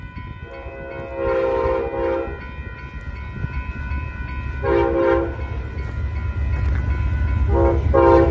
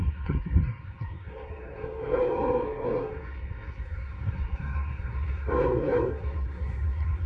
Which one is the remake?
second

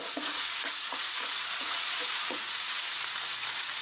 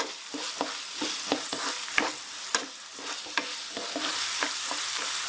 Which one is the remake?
first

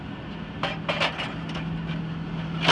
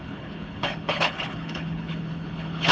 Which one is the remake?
second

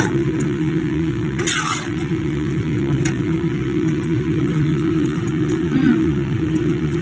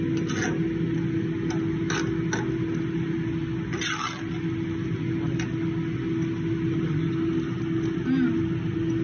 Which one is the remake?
first